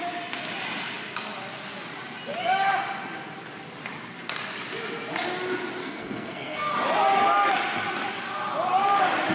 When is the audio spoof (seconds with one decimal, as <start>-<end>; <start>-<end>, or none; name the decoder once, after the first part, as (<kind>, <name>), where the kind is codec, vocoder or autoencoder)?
5.8-6.7 (codec, SNAC)